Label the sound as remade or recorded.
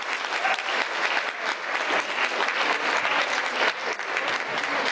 recorded